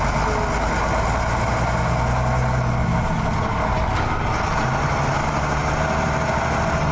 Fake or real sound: real